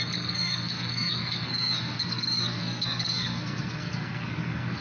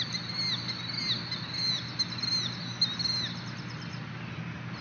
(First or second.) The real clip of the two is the second